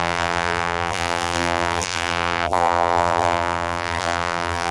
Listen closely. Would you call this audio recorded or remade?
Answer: remade